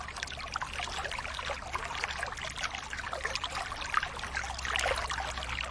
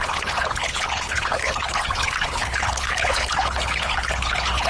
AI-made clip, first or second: second